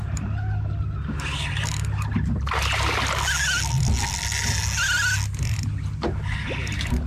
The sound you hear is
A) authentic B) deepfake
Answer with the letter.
A